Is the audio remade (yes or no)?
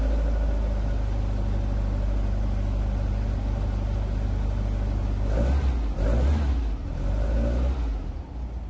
no